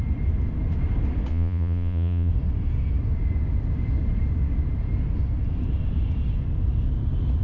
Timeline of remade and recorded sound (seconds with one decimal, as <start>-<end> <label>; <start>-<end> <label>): 0.0-1.3 recorded; 1.3-2.3 remade; 2.3-7.4 recorded